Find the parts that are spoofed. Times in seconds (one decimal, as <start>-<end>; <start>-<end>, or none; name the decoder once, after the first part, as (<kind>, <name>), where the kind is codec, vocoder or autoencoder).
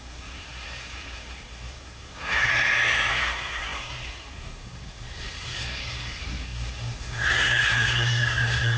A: 0.0-2.5 (codec, SNAC); 3.1-8.8